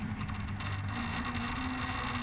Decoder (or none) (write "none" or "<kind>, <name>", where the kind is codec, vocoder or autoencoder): none